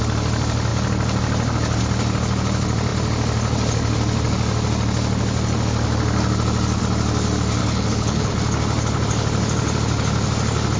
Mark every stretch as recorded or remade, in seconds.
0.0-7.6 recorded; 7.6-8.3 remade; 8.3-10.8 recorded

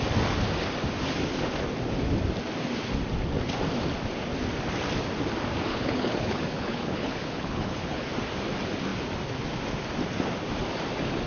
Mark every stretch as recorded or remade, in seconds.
0.0-5.7 recorded; 5.7-8.1 remade; 8.1-11.3 recorded

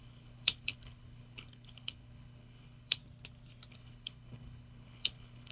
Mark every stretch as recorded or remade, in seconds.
0.0-3.0 remade; 3.0-3.7 recorded; 3.7-5.5 remade